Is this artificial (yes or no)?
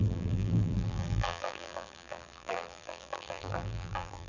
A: yes